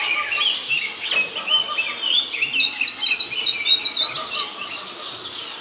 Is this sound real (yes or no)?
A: yes